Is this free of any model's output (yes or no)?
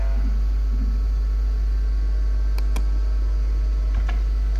yes